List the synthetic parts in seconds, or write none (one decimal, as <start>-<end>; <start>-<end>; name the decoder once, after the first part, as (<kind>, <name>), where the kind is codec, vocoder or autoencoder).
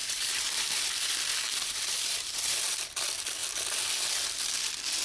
0.0-0.7 (vocoder, BigVGAN v2); 1.3-2.6